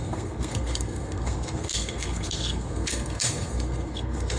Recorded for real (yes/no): no